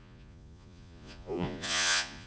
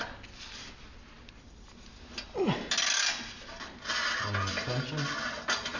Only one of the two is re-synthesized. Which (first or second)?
first